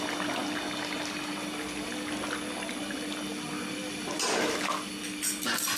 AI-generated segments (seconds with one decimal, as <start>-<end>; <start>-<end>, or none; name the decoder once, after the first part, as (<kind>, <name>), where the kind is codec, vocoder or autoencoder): none